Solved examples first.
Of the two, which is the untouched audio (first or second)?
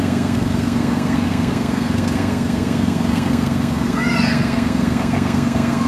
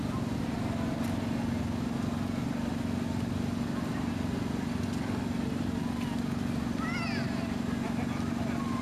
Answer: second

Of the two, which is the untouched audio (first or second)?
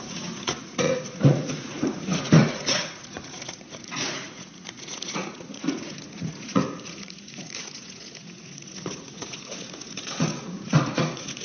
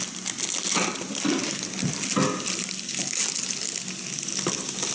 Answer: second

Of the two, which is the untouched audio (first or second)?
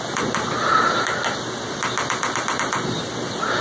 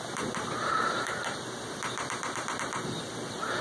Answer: first